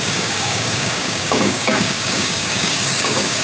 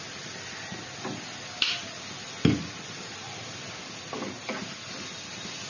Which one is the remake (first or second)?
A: first